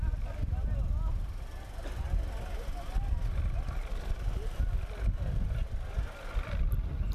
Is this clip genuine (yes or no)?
yes